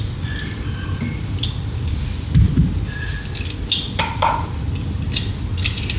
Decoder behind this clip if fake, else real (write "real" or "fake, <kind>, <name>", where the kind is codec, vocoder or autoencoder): real